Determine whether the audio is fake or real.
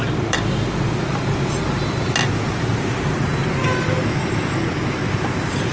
real